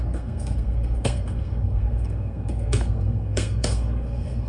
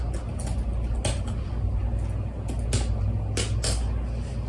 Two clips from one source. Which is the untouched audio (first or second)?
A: second